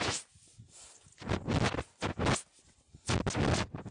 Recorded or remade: recorded